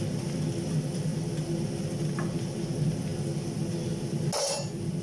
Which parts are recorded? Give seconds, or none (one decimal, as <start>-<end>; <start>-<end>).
0.0-5.0